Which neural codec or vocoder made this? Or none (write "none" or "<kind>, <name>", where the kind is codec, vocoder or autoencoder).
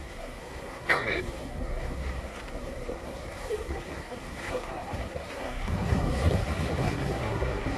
codec, SNAC